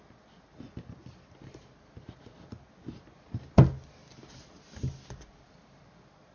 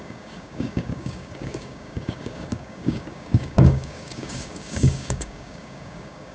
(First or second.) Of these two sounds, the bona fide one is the first